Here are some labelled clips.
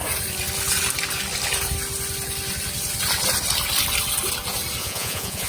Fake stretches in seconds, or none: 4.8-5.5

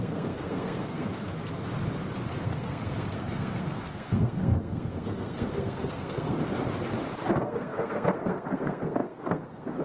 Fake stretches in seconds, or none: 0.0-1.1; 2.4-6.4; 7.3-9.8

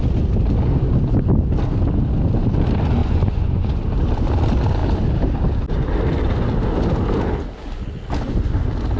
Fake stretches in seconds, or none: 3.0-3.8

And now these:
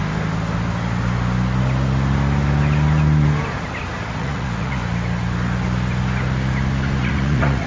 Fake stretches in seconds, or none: 4.1-4.8; 7.0-7.7

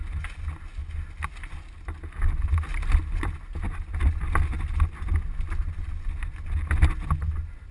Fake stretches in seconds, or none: none

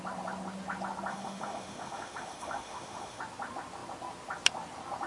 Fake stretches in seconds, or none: 1.1-3.2